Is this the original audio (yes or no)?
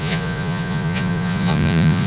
no